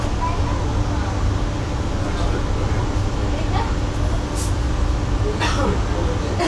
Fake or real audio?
real